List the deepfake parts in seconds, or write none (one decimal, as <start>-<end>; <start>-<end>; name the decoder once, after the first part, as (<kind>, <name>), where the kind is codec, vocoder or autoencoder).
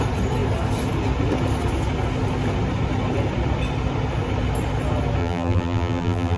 5.2-6.4 (vocoder, BigVGAN v2)